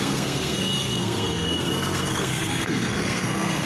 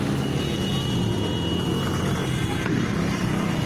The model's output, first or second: first